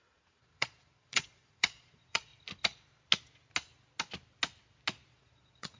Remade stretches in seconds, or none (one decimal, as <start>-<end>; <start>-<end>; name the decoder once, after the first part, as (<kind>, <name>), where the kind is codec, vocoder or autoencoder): 0.0-2.3 (vocoder, Vocos); 5.1-5.8